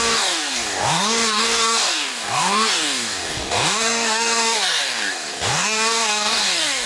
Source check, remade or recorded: remade